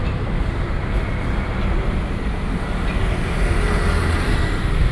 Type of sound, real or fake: real